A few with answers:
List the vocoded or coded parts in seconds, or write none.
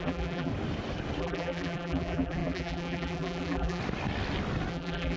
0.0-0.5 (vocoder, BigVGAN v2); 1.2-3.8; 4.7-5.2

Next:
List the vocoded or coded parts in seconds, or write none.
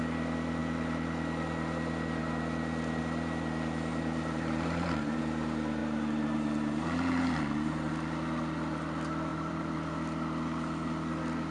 3.9-5.2 (vocoder, BigVGAN v2); 5.8-7.9; 9.3-9.8